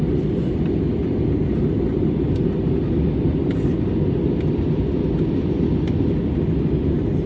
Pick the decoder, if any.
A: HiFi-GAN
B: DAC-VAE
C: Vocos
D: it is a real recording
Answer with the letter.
D